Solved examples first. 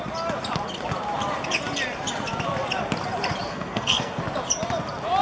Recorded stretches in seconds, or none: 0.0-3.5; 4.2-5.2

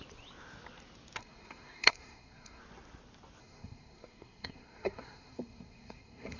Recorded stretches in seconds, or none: 0.0-1.2; 2.6-3.4